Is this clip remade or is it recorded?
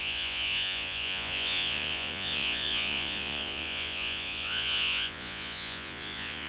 remade